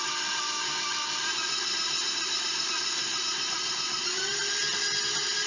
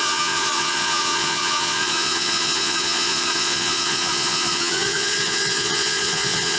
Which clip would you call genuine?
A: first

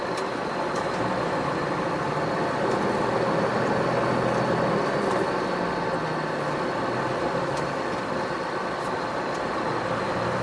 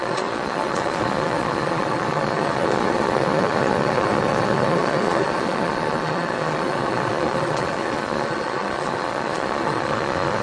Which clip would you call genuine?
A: first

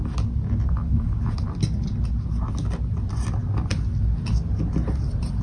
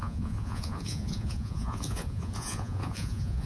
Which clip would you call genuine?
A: first